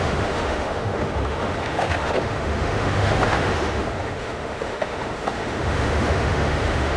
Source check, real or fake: fake